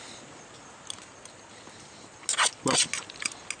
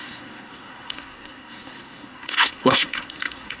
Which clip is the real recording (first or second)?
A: first